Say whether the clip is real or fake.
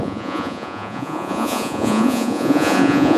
fake